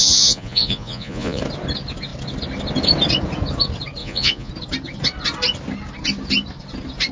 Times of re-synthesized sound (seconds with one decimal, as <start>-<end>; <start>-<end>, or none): 0.0-1.4; 4.0-4.5